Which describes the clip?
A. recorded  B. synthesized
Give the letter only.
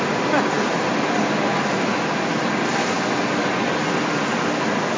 A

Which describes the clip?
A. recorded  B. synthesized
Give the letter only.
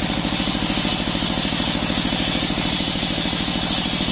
A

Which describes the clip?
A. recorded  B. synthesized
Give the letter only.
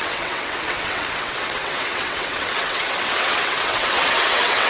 B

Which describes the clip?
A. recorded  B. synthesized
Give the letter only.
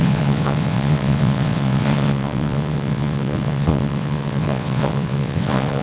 B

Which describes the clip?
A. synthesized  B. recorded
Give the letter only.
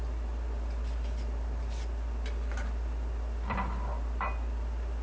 B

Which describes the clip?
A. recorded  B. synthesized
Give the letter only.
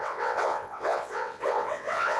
B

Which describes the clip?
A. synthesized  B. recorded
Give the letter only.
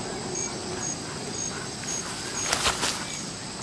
B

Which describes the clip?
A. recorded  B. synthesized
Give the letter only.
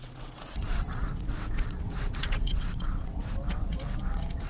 B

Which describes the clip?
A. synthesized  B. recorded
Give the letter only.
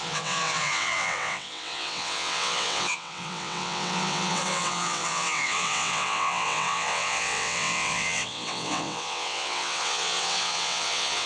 A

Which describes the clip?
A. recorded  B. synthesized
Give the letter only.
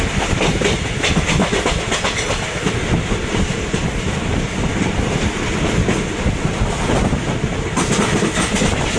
A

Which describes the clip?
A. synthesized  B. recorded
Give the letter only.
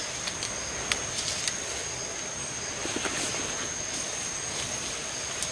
B